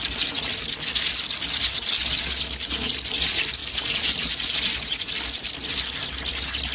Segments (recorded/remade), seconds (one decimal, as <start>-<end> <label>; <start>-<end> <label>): 0.0-3.6 recorded; 3.6-5.1 remade; 5.1-6.7 recorded